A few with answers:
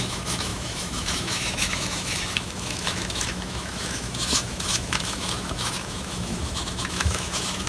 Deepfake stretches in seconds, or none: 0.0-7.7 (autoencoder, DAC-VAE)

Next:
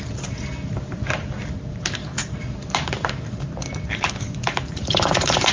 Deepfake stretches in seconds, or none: 2.0-5.5 (vocoder, BigVGAN v2)

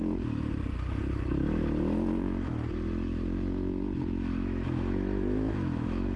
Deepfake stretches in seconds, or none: 4.3-6.2 (autoencoder, DAC-VAE)

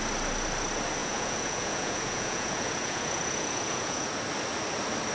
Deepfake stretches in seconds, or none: 1.0-4.1 (vocoder, Vocos)

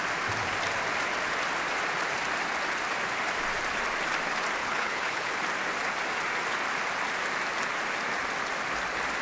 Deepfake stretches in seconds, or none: 4.6-5.3 (codec, HILCodec)